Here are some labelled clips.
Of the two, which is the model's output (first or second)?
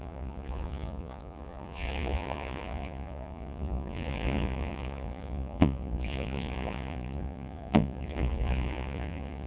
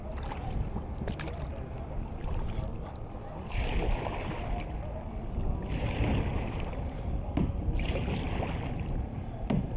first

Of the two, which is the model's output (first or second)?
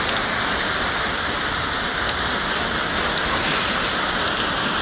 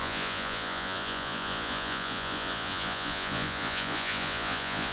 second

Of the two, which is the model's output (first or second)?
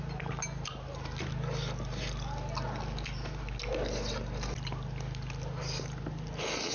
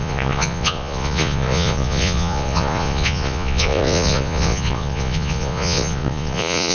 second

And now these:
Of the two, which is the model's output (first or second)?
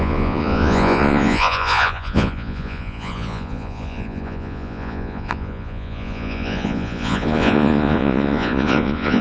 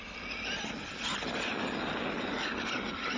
first